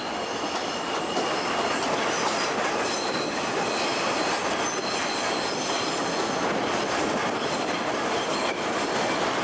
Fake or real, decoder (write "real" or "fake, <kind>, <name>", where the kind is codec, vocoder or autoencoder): real